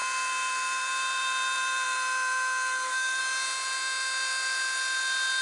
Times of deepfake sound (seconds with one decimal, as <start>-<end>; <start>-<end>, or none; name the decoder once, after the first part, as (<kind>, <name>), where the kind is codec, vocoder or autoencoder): 0.0-3.2 (vocoder, BigVGAN v2)